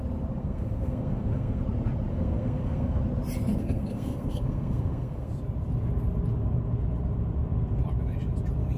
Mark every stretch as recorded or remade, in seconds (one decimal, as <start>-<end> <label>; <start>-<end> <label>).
0.0-0.4 recorded; 0.4-1.6 remade; 1.6-2.1 recorded; 2.1-3.0 remade; 3.0-3.5 recorded; 3.5-5.3 remade; 5.3-8.8 recorded